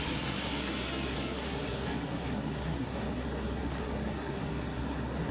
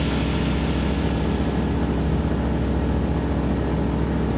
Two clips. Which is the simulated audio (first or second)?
first